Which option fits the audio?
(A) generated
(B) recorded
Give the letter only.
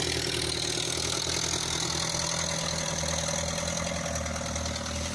B